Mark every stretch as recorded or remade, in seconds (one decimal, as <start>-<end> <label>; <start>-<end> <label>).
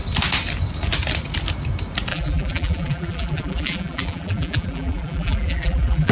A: 0.0-2.1 recorded; 2.1-6.1 remade